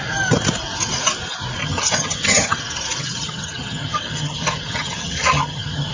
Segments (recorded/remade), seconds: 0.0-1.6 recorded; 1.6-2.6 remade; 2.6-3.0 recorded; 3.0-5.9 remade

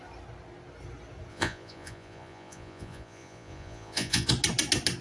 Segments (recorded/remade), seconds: 0.0-1.3 recorded; 1.3-4.3 remade; 4.3-5.0 recorded

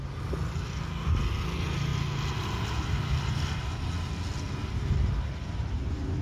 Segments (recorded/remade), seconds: 0.0-6.2 recorded

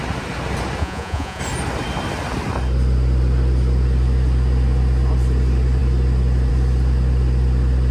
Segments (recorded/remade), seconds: 0.0-0.8 recorded; 0.8-1.4 remade; 1.4-7.9 recorded

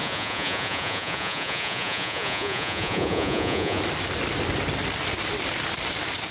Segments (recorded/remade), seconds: 0.0-3.8 remade; 3.8-6.3 recorded